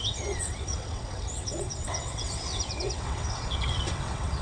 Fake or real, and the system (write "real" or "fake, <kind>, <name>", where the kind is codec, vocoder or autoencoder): fake, vocoder, WaveNeXt